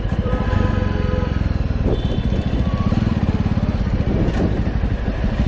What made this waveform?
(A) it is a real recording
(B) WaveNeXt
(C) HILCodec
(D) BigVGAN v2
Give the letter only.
D